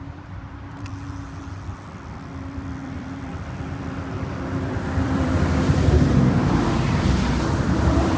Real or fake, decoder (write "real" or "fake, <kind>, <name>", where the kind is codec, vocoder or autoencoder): fake, vocoder, BigVGAN v2